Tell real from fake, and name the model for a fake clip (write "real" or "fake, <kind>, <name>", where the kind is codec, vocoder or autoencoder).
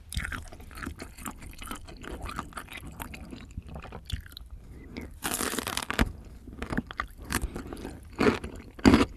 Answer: fake, vocoder, BigVGAN v2